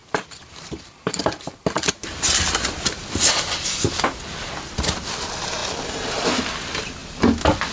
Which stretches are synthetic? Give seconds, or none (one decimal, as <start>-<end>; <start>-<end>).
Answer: 0.0-3.9